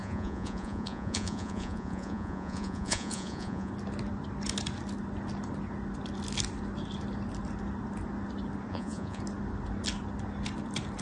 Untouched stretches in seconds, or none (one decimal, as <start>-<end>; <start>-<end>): 3.7-8.7; 9.2-11.0